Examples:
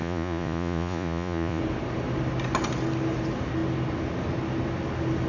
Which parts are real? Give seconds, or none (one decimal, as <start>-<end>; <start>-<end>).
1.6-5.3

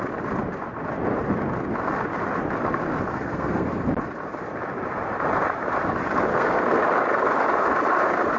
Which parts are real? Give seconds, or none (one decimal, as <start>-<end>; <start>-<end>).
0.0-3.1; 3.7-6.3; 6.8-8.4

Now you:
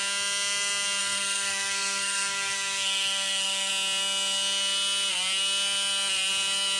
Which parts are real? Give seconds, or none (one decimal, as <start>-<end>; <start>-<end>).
0.0-1.0; 3.7-6.8